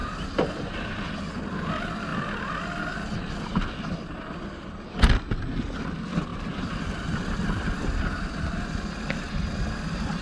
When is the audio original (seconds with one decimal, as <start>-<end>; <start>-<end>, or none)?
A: 1.0-6.3; 6.8-10.2